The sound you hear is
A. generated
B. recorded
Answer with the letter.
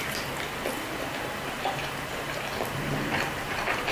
B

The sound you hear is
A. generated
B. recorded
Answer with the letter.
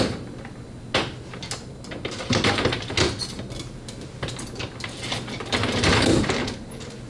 B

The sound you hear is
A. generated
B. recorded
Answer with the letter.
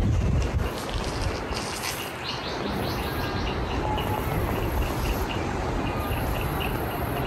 B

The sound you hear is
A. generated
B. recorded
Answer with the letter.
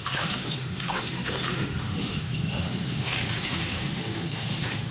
A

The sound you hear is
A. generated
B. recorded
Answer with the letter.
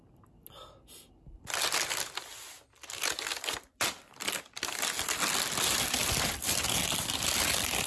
B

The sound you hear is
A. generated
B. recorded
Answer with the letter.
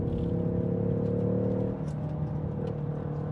B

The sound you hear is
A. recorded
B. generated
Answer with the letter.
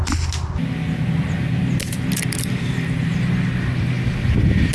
A